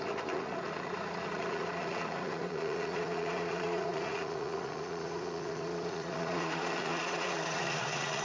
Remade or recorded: remade